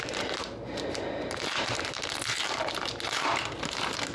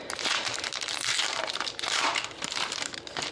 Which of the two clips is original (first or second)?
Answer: first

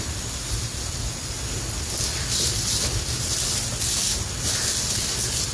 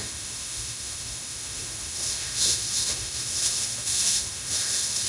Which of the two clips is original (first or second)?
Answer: first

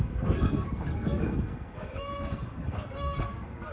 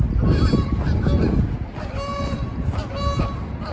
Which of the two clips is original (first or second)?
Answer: second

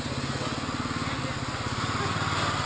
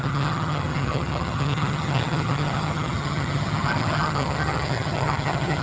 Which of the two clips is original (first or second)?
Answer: first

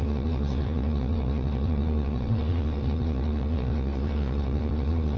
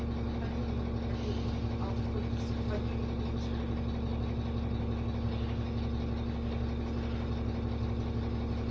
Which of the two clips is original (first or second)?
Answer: second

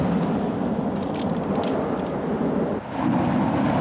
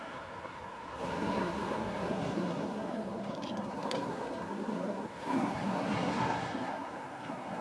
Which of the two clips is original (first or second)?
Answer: first